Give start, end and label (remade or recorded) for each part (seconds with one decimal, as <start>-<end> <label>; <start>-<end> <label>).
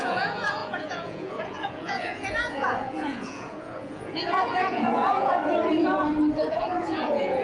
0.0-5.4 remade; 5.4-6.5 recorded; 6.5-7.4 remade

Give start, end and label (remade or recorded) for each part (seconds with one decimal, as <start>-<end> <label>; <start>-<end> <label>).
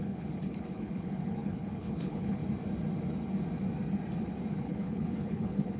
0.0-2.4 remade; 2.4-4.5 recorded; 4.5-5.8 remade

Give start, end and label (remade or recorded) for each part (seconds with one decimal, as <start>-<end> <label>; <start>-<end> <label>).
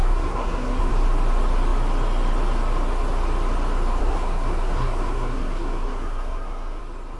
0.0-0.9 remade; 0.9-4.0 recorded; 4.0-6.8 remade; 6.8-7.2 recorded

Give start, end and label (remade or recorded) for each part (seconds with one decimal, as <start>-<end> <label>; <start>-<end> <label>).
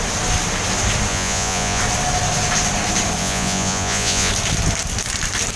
0.0-1.1 recorded; 1.1-1.8 remade; 1.8-3.2 recorded; 3.2-4.3 remade; 4.3-5.6 recorded